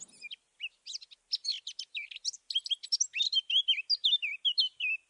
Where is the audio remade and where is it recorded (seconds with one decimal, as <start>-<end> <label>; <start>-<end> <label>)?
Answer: 0.0-5.1 recorded